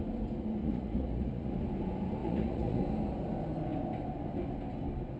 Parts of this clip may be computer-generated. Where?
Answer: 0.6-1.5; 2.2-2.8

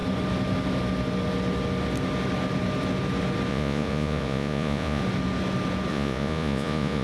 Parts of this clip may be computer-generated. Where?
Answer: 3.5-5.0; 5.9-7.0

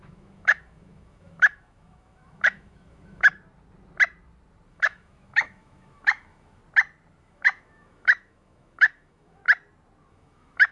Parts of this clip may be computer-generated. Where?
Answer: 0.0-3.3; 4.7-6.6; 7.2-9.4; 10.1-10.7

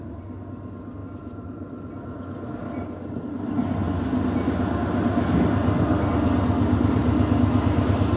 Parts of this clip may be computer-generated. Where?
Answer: none

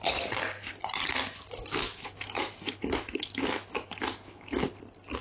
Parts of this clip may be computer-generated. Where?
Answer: 1.6-4.7

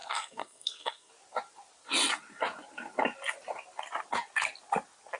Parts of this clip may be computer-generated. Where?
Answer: 0.0-1.1

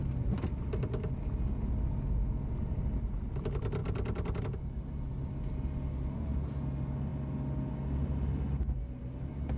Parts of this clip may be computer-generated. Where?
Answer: none

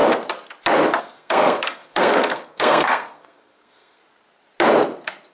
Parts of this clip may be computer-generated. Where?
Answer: 1.0-4.0